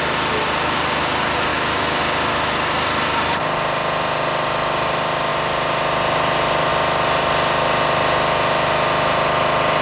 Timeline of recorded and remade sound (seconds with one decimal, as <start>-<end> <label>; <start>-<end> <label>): 0.0-1.5 recorded; 1.5-2.0 remade; 2.0-9.8 recorded